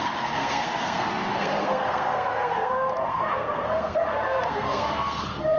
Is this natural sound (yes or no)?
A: no